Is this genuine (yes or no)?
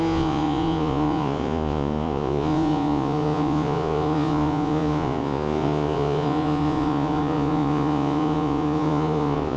no